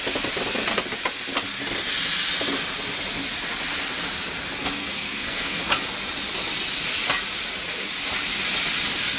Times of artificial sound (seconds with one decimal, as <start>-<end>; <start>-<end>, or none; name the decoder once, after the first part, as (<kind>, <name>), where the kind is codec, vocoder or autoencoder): 4.8-5.6 (codec, SNAC)